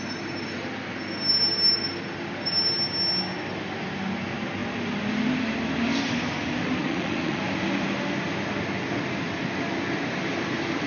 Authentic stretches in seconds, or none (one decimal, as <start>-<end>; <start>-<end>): 0.0-6.8; 7.4-10.9